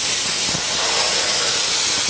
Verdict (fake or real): real